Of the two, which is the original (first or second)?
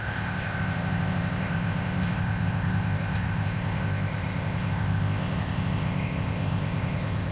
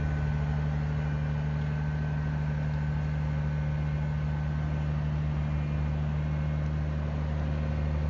second